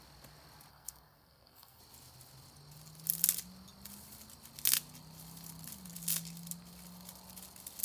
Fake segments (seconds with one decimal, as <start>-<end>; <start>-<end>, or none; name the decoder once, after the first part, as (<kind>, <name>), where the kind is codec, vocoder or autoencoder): 0.7-1.8 (codec, SNAC)